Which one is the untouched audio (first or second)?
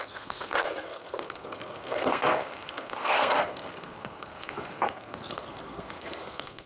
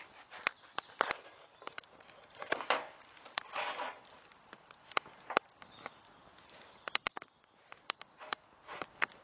second